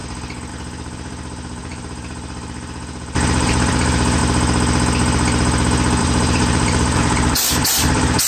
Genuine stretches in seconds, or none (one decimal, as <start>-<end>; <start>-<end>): 0.0-0.5; 4.2-6.0